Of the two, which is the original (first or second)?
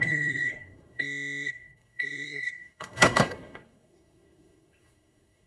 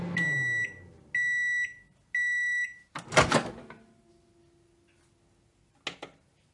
second